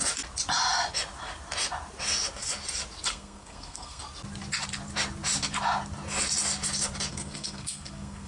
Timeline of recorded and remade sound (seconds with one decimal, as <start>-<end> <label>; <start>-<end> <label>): 0.0-3.1 recorded; 3.1-4.0 remade; 4.0-7.1 recorded; 7.1-8.3 remade

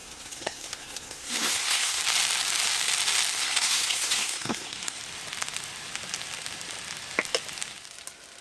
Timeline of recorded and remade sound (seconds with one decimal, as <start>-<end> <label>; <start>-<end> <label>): 0.0-2.0 remade; 2.0-3.4 recorded; 3.4-5.0 remade; 5.0-8.4 recorded

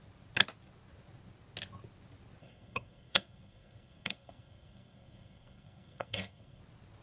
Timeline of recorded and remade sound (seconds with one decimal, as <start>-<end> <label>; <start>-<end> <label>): 0.0-2.4 recorded; 2.4-6.6 remade; 6.6-7.0 recorded

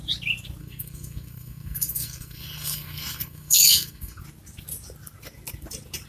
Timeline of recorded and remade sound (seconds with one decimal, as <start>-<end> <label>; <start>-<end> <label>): 0.0-0.6 recorded; 0.6-4.2 remade; 4.2-6.1 recorded